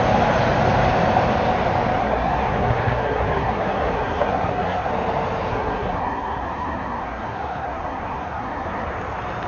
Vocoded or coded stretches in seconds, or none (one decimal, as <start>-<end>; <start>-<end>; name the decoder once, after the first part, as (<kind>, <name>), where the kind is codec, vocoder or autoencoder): 2.0-4.9 (codec, SNAC); 5.5-8.9